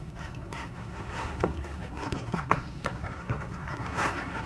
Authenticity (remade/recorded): remade